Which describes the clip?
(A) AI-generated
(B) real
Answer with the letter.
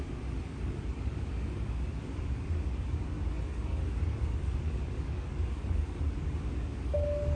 A